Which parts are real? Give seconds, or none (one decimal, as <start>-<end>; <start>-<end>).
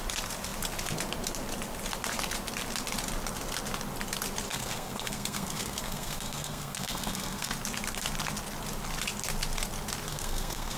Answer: 0.0-4.5; 7.5-10.1